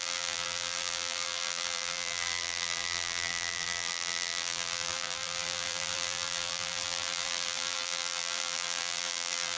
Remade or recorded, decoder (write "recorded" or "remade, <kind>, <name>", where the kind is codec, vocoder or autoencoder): remade, vocoder, BigVGAN v2